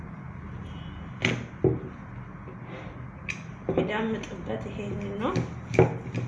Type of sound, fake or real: real